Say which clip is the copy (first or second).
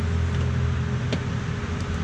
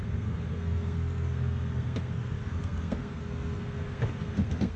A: second